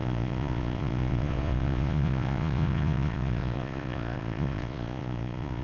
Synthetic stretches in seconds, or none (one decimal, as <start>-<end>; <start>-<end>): 0.0-5.6